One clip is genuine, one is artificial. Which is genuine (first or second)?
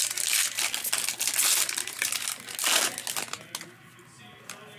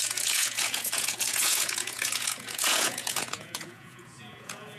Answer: first